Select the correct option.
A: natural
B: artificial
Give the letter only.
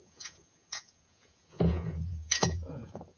B